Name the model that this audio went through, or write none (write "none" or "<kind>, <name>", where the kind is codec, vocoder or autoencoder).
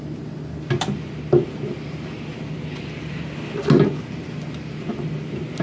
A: none